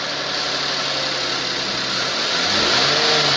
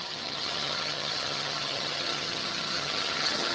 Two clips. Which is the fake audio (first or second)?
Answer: second